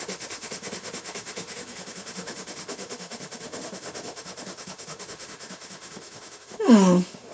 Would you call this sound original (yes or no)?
no